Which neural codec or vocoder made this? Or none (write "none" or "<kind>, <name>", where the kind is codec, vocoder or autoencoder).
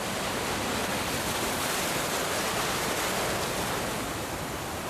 none